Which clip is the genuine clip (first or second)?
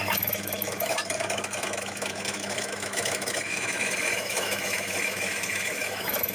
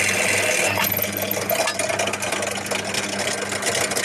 second